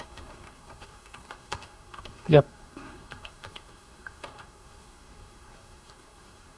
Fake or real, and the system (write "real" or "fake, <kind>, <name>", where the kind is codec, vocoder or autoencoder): fake, codec, SNAC